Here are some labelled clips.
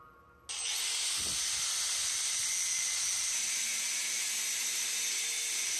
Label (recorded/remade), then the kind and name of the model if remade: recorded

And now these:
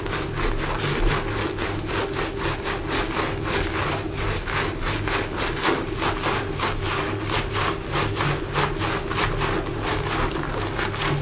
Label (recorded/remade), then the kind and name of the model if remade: recorded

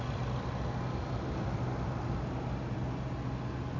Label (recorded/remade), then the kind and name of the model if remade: recorded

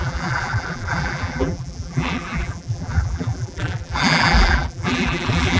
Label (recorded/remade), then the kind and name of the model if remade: remade, vocoder, BigVGAN v2